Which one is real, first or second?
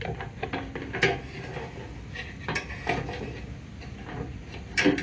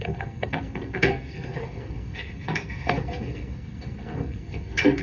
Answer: first